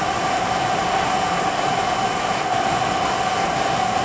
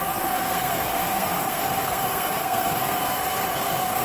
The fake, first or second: second